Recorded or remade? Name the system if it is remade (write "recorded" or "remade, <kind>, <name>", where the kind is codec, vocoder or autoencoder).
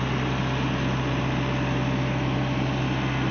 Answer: recorded